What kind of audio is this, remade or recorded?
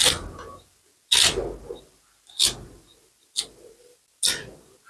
recorded